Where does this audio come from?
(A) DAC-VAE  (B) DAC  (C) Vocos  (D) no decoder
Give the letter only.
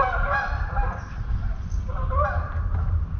D